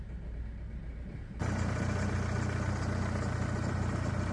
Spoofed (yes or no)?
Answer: no